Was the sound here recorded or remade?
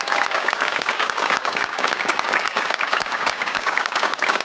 remade